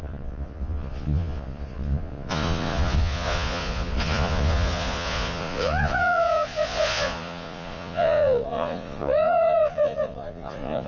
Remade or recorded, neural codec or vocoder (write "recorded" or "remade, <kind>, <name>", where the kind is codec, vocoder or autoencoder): remade, vocoder, Vocos